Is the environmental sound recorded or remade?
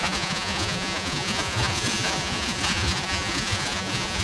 remade